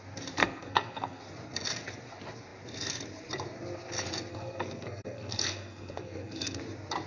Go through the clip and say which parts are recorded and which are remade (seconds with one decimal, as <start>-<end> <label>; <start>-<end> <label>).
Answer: 0.0-0.4 recorded; 0.4-1.2 remade; 1.2-4.3 recorded; 4.3-6.6 remade; 6.6-7.1 recorded